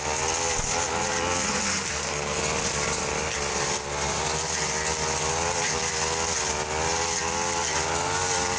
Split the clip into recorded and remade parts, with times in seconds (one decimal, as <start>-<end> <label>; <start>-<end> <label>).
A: 0.0-1.5 recorded; 1.5-2.4 remade; 2.4-8.6 recorded